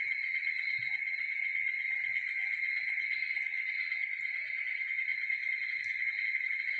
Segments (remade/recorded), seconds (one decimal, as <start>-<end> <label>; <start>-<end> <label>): 0.0-6.8 remade